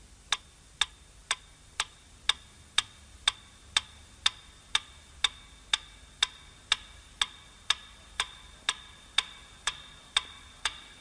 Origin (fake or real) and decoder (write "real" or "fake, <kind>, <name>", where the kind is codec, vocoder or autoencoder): real